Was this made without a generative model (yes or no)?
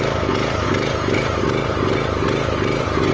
yes